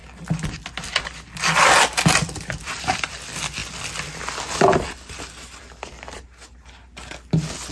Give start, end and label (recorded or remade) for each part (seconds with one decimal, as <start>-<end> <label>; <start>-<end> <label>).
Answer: 0.0-7.7 recorded